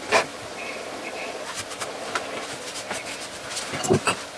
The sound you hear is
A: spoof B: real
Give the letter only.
A